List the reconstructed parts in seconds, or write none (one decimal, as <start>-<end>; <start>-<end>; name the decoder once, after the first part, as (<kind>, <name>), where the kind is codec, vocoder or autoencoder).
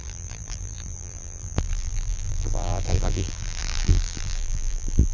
0.0-5.1 (vocoder, BigVGAN v2)